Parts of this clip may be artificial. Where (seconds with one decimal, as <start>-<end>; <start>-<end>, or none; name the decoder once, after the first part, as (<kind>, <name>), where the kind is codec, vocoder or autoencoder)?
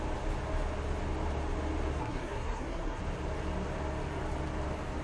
1.9-3.0 (codec, SNAC)